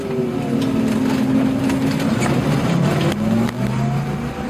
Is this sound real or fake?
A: real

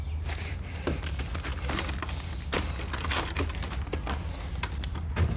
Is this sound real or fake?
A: real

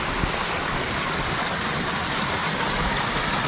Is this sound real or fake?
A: real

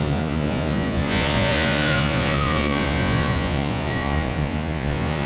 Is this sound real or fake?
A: fake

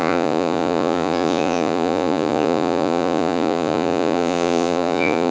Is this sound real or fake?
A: fake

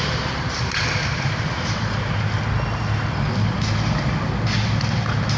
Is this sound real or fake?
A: real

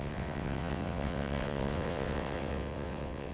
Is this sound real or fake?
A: fake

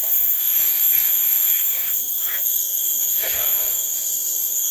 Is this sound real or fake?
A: fake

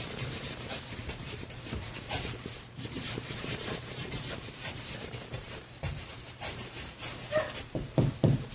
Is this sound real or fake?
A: fake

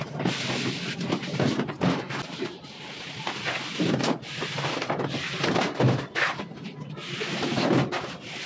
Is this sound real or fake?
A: real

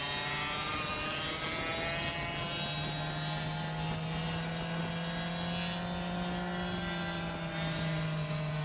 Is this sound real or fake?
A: real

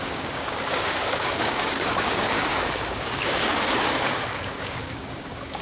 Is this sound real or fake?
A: fake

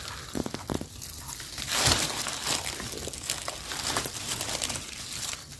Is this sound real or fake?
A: real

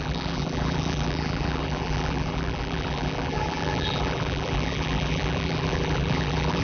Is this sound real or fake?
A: fake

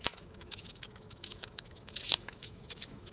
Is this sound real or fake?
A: fake